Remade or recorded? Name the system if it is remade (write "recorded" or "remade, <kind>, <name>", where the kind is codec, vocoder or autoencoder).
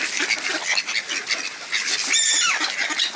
recorded